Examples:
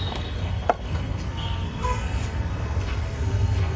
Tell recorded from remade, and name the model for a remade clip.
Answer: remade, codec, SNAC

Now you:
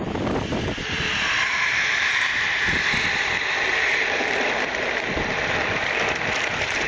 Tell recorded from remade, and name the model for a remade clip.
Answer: remade, vocoder, BigVGAN v2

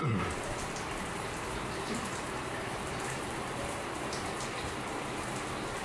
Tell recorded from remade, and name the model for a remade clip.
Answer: remade, vocoder, BigVGAN v2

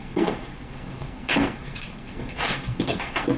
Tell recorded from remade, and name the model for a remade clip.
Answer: remade, codec, SNAC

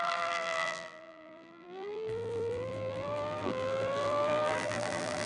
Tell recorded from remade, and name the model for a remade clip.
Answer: remade, vocoder, BigVGAN v2